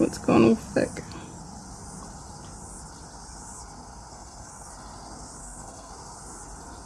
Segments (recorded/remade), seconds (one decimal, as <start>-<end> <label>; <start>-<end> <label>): 0.0-4.1 recorded; 4.1-4.7 remade; 4.7-5.4 recorded; 5.4-5.9 remade; 5.9-6.9 recorded